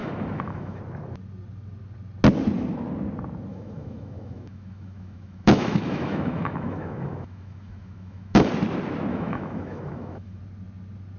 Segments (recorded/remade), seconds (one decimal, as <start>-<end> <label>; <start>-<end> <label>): 0.0-0.8 remade; 0.8-3.5 recorded; 3.5-8.5 remade; 8.5-9.1 recorded; 9.1-10.4 remade; 10.4-11.2 recorded

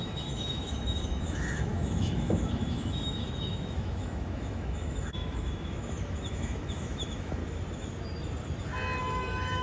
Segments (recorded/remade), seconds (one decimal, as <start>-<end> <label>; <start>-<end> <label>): 0.0-7.4 remade; 7.4-9.0 recorded; 9.0-9.6 remade

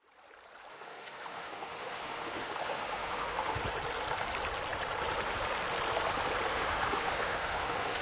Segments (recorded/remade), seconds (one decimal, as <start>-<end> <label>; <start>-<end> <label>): 0.0-0.7 recorded; 0.7-3.6 remade; 3.6-6.5 recorded; 6.5-8.0 remade